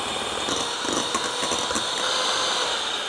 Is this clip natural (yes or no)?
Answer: yes